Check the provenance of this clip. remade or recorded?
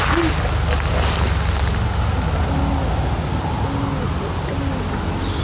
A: recorded